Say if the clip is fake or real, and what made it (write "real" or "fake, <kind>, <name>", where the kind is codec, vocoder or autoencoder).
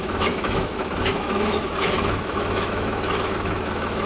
fake, autoencoder, DAC-VAE